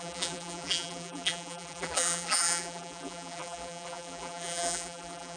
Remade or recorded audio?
remade